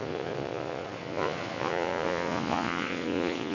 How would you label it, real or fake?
fake